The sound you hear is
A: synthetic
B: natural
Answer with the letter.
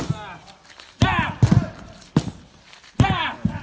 B